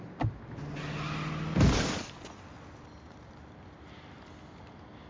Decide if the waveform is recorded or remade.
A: recorded